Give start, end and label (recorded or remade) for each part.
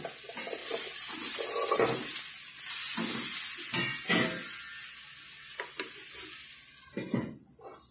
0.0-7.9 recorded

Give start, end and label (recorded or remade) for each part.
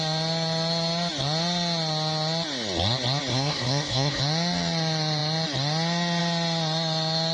0.0-3.3 recorded; 3.3-4.2 remade; 4.2-7.3 recorded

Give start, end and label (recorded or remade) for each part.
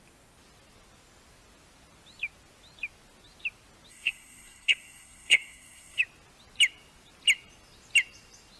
0.0-3.9 recorded; 3.9-6.0 remade; 6.0-8.6 recorded